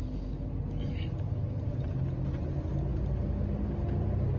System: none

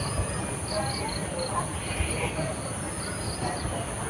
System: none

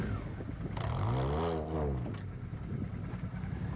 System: none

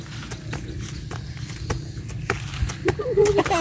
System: none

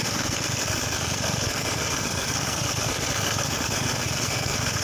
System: codec, SNAC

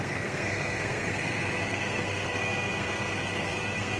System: codec, SNAC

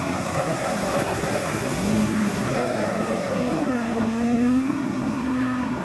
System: codec, SNAC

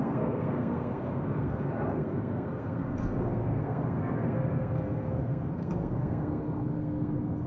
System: codec, SNAC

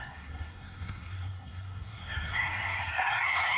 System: codec, SNAC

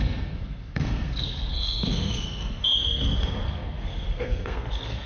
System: codec, SNAC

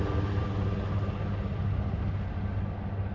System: none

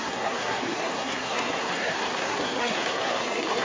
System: codec, SNAC